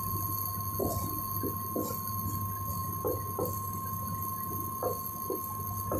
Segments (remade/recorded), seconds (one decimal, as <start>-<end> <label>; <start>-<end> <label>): 0.0-6.0 recorded